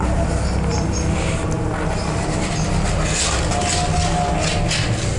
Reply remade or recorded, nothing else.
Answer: recorded